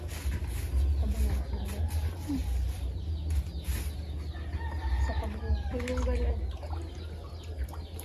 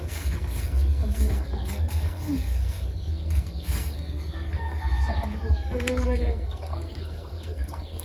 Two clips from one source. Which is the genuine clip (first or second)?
first